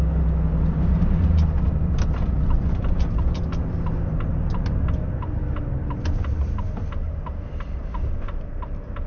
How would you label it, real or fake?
real